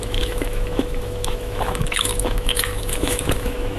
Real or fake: fake